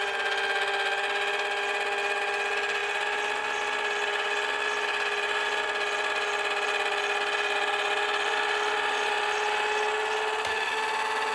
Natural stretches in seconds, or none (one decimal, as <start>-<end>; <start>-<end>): 0.0-11.3